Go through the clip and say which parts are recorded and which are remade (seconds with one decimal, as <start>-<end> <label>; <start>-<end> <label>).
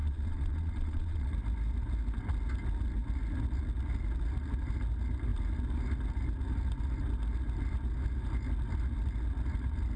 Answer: 0.0-1.3 remade; 1.3-10.0 recorded